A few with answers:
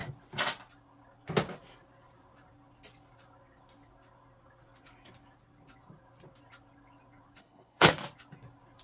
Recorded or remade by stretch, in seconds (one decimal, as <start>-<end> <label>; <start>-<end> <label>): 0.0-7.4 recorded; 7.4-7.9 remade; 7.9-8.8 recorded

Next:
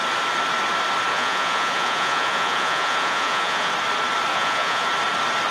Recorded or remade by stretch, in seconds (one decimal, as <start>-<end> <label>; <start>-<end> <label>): 0.0-1.1 recorded; 1.1-3.7 remade; 3.7-4.3 recorded; 4.3-4.9 remade; 4.9-5.5 recorded

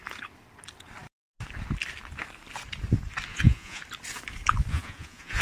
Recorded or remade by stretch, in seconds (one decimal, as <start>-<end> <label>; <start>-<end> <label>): 0.0-3.3 recorded; 3.3-3.8 remade; 3.8-4.7 recorded; 4.7-5.4 remade